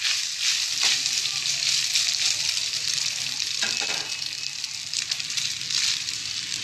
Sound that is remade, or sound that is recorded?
remade